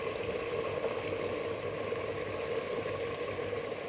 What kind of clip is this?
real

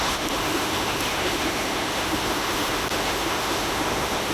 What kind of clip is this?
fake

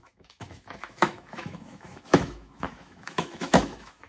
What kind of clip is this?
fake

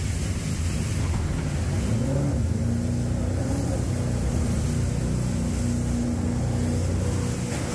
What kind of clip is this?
real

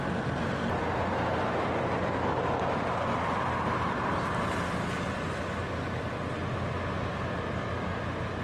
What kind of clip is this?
real